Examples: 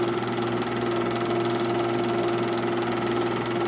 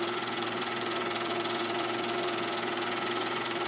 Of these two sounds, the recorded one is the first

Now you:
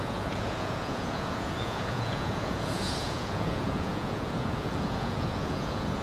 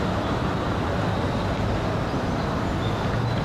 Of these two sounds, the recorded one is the second